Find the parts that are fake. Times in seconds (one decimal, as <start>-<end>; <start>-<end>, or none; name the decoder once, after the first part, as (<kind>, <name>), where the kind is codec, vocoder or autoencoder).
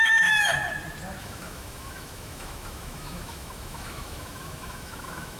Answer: 0.0-0.5 (autoencoder, DAC-VAE); 1.2-5.4